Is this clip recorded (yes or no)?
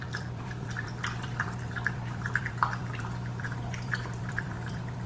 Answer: no